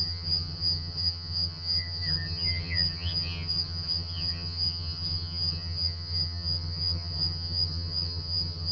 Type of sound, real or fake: fake